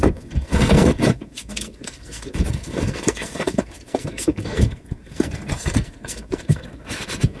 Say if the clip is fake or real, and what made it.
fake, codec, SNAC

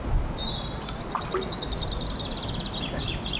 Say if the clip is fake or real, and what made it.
real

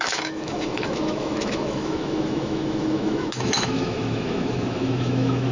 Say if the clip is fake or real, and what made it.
fake, autoencoder, DAC-VAE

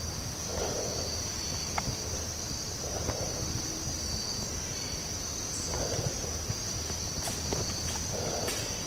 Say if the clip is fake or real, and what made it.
real